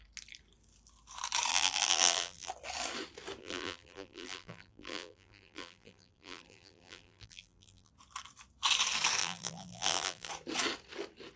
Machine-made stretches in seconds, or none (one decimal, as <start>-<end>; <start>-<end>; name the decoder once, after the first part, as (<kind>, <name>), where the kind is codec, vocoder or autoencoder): 1.5-2.5 (vocoder, BigVGAN v2); 3.4-7.9; 9.2-10.3